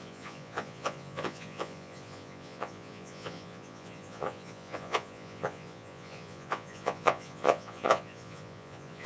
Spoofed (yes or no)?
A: yes